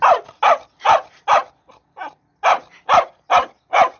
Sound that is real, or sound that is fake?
real